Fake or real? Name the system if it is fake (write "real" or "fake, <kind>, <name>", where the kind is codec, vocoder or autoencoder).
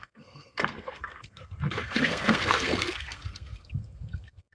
fake, codec, SNAC